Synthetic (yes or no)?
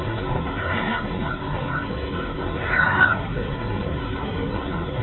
yes